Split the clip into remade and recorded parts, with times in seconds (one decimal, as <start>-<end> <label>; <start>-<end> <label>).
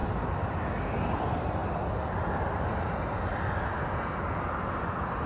0.0-5.3 recorded